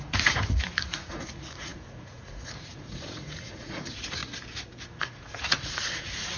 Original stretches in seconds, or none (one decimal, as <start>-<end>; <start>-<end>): 4.2-5.0